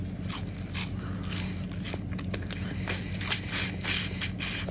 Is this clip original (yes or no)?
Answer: yes